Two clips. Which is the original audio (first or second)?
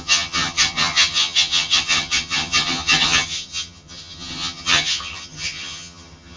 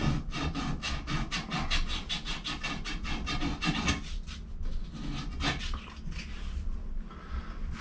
second